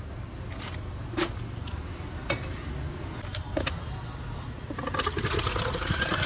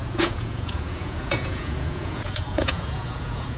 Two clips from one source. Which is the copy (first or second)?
second